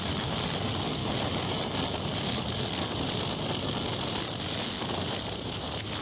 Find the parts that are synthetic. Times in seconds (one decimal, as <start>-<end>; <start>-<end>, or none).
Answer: none